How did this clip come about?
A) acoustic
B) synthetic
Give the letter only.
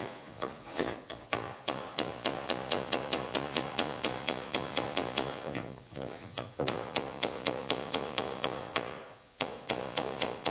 B